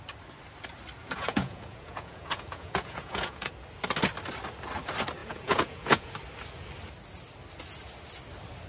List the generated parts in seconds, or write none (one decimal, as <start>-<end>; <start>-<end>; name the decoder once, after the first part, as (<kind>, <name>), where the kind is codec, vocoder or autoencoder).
1.0-3.5 (vocoder, Vocos); 5.2-6.1